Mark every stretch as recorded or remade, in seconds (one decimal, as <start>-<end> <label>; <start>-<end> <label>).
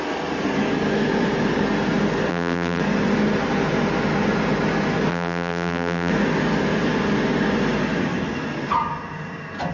0.0-2.3 recorded; 2.3-2.8 remade; 2.8-5.1 recorded; 5.1-6.1 remade; 6.1-9.7 recorded